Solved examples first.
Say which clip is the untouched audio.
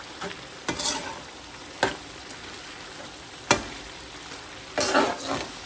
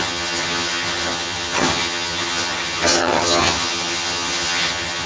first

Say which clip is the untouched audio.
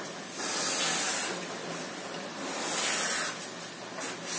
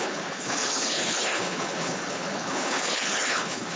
first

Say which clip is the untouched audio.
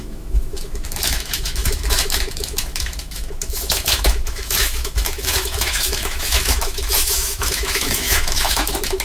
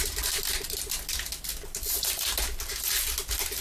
second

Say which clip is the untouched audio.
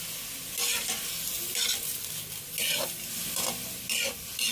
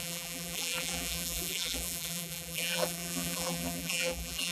first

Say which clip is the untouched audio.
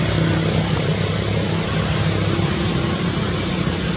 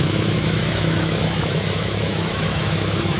first